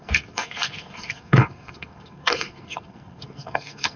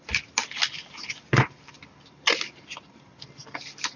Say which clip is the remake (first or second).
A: first